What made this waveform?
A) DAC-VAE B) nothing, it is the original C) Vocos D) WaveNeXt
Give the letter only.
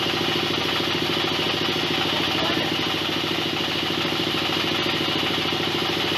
B